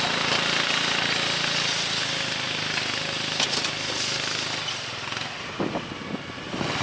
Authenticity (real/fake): real